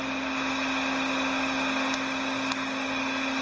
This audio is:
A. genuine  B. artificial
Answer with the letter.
A